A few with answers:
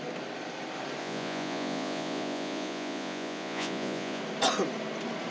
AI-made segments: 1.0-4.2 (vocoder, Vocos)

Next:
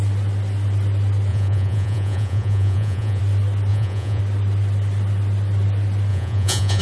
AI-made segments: 1.3-3.2 (vocoder, Vocos); 3.7-4.2; 6.1-6.8

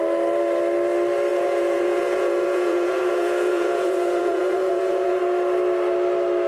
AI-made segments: 1.3-5.2 (vocoder, Vocos)